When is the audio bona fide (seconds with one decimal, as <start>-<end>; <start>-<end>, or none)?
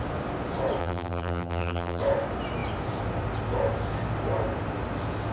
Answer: 0.0-0.8; 2.0-5.3